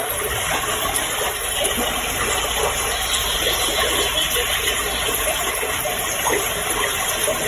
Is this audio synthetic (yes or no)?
yes